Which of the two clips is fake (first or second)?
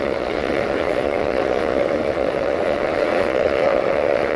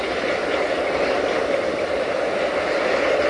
first